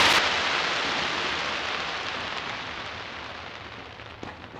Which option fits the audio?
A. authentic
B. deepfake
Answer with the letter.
A